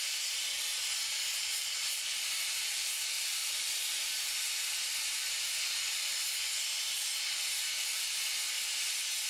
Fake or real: real